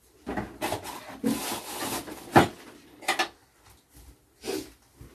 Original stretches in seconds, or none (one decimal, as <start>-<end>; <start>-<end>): 0.0-5.1